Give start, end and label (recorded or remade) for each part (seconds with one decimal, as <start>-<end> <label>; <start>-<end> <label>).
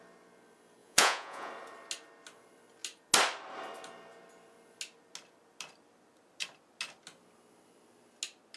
0.0-0.8 recorded; 0.8-1.5 remade; 1.5-8.6 recorded